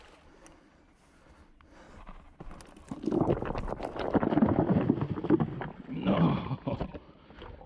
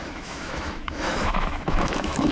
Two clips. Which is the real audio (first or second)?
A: first